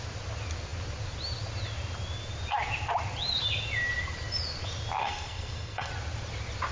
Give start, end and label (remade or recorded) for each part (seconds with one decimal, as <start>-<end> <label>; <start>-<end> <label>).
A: 0.0-5.0 recorded; 5.0-5.9 remade; 5.9-6.7 recorded